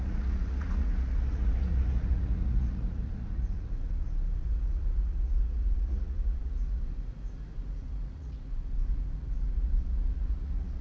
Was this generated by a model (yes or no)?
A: yes